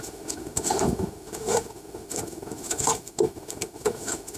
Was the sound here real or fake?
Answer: fake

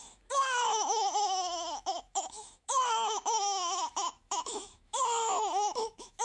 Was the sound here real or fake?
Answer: fake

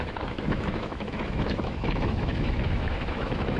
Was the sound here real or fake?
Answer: fake